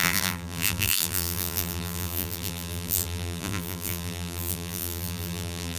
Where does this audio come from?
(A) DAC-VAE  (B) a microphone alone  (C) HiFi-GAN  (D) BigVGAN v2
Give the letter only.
D